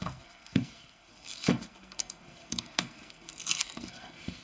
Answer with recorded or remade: remade